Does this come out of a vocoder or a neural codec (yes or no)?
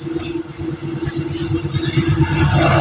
no